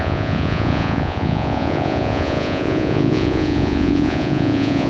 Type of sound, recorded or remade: remade